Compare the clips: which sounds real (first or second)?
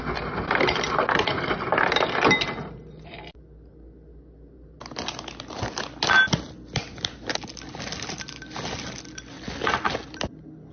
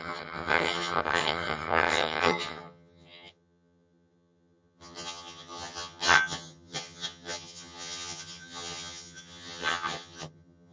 first